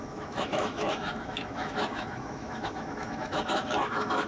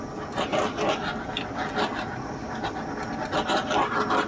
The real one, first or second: second